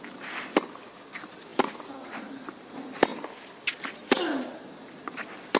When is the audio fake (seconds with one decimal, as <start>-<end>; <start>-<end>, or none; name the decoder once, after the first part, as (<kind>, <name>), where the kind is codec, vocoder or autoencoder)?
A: none